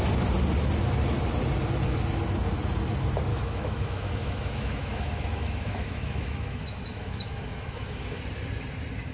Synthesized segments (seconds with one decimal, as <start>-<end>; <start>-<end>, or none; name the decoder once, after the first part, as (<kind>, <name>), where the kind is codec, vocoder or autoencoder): 3.3-8.2 (autoencoder, DAC-VAE)